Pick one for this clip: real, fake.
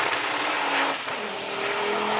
real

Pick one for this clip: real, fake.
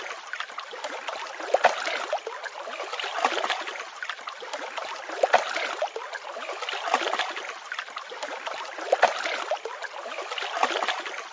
real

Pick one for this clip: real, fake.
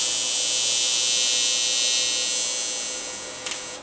real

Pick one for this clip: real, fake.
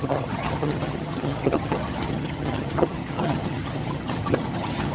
fake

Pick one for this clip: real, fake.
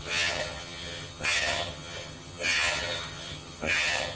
fake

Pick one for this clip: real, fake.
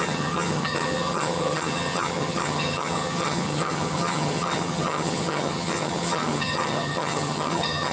fake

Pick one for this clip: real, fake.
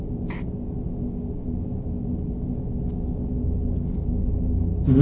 real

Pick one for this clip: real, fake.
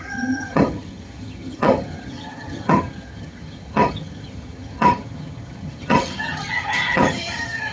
fake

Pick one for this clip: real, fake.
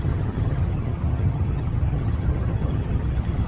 fake